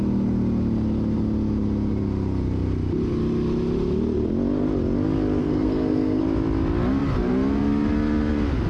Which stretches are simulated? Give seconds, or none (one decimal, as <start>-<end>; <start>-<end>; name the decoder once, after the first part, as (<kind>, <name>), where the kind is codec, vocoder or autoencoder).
5.4-6.2 (codec, SNAC)